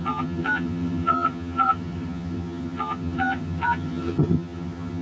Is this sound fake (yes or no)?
yes